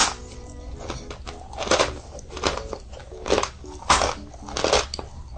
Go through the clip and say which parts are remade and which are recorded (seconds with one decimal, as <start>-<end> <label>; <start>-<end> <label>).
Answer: 0.0-3.0 recorded; 3.0-4.3 remade; 4.3-5.4 recorded